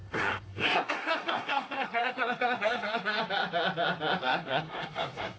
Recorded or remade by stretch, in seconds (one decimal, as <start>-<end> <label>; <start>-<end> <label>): 0.0-3.2 remade; 3.2-4.2 recorded; 4.2-5.4 remade